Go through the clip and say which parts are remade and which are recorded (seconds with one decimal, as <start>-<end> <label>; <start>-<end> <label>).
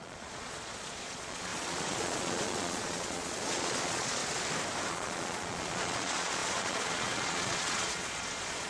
0.0-4.2 remade; 4.2-4.9 recorded; 4.9-8.7 remade